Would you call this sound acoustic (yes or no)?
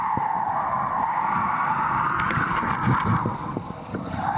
yes